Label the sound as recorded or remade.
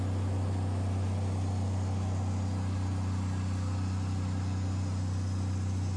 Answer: recorded